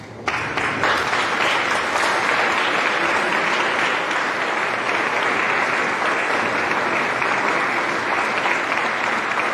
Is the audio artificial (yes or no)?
no